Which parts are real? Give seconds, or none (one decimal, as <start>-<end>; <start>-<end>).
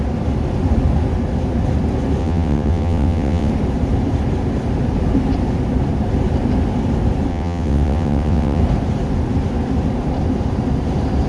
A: 0.0-2.2; 3.5-7.3; 8.6-11.3